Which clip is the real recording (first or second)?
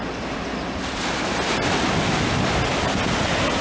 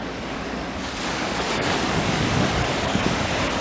first